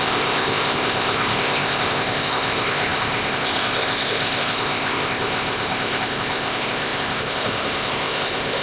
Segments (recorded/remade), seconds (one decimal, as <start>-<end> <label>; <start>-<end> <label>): 0.0-8.6 remade